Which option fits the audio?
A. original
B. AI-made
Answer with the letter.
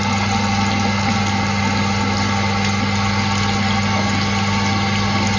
A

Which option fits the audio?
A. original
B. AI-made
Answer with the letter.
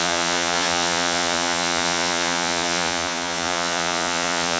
B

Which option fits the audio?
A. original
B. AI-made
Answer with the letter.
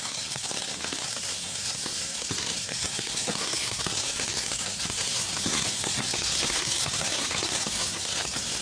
B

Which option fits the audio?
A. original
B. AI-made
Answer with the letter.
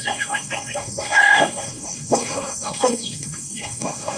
B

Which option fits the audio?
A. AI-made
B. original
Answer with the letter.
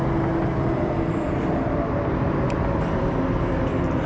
B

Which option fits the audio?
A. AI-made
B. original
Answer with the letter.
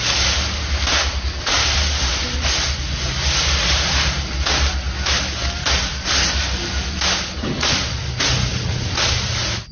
B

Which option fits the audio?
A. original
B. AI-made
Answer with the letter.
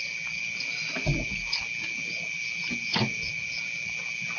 A